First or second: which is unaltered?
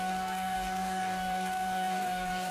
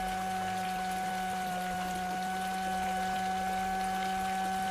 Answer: second